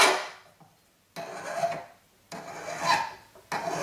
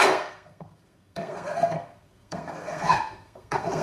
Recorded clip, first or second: first